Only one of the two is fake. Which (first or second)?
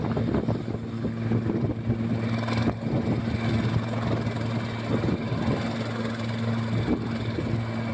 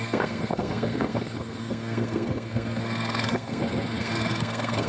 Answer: second